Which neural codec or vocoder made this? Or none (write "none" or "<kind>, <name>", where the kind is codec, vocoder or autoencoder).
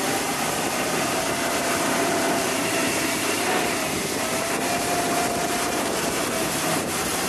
vocoder, BigVGAN v2